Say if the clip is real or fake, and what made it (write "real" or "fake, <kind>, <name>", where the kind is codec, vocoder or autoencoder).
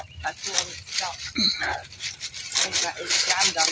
real